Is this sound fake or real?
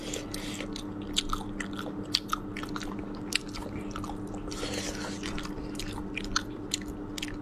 real